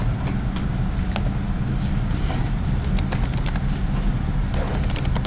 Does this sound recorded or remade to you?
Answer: recorded